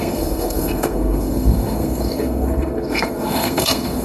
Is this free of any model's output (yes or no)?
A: no